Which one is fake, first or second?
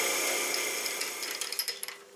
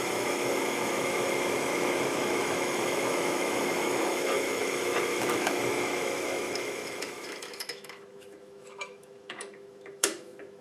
second